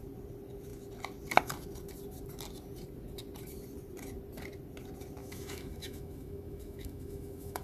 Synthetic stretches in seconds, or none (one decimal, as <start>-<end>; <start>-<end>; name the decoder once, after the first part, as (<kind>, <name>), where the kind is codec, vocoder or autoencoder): 5.2-7.6 (autoencoder, DAC-VAE)